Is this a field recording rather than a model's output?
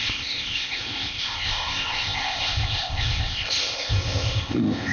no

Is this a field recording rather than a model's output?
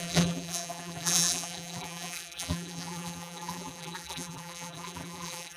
no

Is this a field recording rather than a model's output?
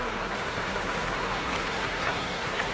no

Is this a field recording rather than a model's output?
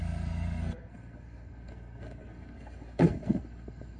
no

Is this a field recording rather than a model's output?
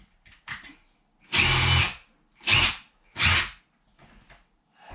yes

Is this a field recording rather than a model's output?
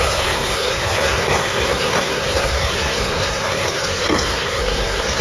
no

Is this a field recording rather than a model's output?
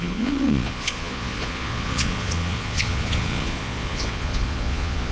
no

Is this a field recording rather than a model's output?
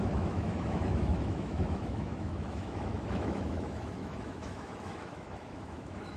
no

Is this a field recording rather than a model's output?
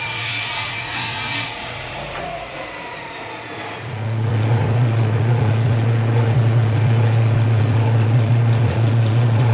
no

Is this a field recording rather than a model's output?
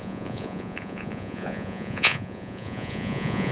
no